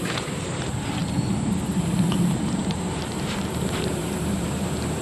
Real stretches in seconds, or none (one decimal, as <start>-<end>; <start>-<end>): none